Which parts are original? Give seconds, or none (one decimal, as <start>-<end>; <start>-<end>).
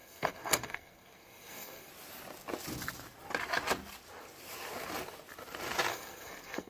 1.9-5.9